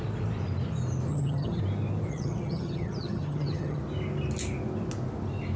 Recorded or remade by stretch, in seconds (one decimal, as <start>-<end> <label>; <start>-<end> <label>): 0.0-1.1 recorded; 1.1-1.6 remade; 1.6-2.1 recorded; 2.1-3.8 remade; 3.8-5.6 recorded